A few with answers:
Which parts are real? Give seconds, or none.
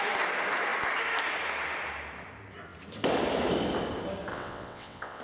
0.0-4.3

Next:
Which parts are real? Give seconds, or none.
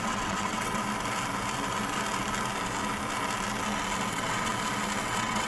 0.8-4.1; 4.5-5.0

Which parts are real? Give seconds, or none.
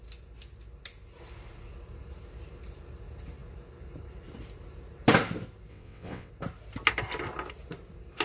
0.0-5.7; 6.3-8.2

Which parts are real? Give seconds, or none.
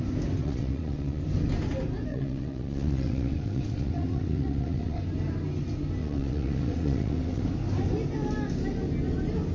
0.0-0.4; 1.2-2.1; 5.0-6.0; 7.4-9.5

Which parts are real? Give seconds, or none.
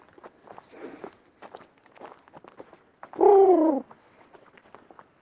0.0-3.3; 4.7-5.2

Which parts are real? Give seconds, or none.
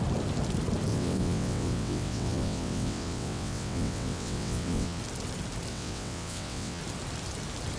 0.0-0.9; 5.0-5.7; 6.8-7.8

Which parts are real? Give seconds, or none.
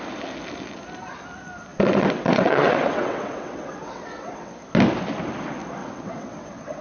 0.0-1.7; 4.6-5.8